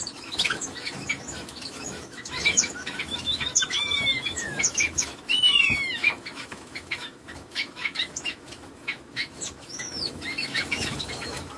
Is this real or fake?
fake